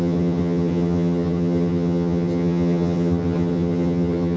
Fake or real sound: fake